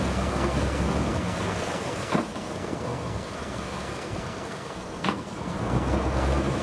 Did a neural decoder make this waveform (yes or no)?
yes